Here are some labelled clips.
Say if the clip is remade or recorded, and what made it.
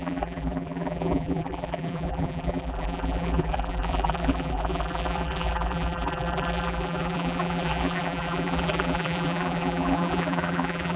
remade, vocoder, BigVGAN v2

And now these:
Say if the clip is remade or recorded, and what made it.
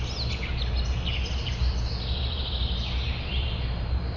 recorded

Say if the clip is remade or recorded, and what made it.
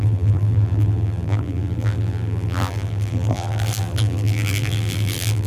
remade, vocoder, BigVGAN v2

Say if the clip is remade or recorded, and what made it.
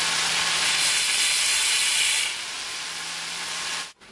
recorded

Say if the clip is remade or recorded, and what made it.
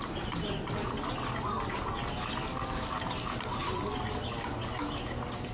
recorded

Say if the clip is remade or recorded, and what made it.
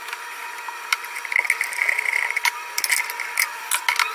recorded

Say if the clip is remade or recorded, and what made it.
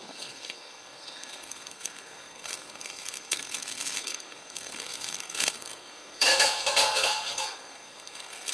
remade, codec, SNAC